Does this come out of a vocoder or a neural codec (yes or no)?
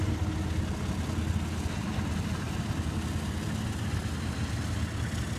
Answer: no